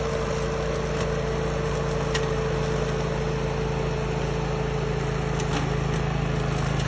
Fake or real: real